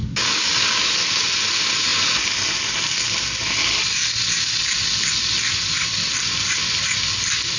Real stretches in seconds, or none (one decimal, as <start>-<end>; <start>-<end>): 0.8-7.6